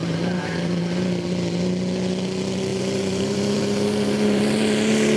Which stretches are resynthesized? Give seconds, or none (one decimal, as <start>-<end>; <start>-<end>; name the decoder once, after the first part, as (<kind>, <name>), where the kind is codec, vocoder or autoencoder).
0.0-0.8 (vocoder, BigVGAN v2); 2.7-4.4